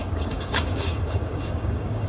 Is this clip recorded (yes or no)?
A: no